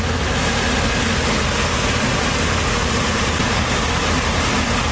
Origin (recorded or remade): recorded